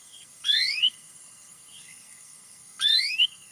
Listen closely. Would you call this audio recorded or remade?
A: remade